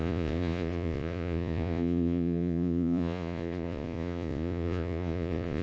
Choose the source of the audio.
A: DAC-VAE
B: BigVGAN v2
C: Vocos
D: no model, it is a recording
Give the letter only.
C